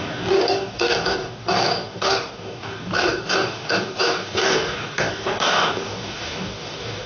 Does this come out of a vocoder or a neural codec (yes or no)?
yes